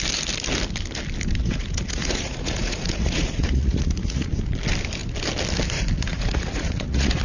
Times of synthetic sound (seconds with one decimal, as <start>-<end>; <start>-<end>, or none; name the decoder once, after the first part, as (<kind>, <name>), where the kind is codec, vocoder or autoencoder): 1.4-4.3 (vocoder, Vocos); 6.1-7.2